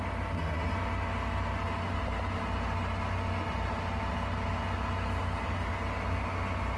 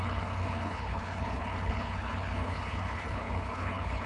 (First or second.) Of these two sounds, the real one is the first